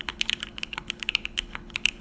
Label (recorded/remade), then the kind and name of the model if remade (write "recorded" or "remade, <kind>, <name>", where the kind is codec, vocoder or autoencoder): remade, codec, HILCodec